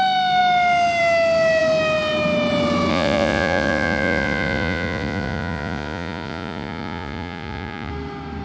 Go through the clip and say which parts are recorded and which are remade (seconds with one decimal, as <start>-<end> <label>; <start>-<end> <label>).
0.0-2.9 recorded; 2.9-7.9 remade; 7.9-8.4 recorded